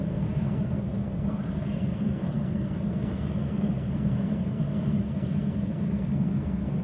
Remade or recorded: remade